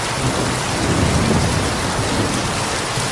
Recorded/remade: recorded